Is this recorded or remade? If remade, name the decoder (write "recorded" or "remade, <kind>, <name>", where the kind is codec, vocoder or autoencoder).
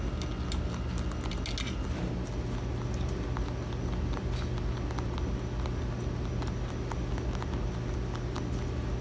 recorded